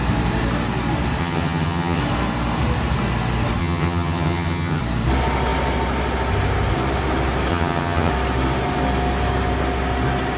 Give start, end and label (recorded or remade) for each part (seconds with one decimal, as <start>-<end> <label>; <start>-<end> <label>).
0.0-1.2 recorded; 1.2-2.0 remade; 2.0-3.6 recorded; 3.6-4.8 remade; 4.8-7.5 recorded; 7.5-8.1 remade; 8.1-10.4 recorded